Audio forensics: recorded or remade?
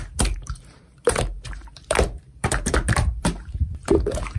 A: remade